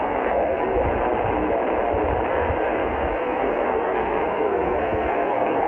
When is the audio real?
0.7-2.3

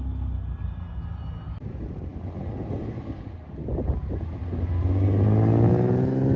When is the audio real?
0.0-6.4